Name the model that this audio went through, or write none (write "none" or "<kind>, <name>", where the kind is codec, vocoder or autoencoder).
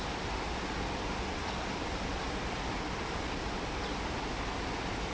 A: none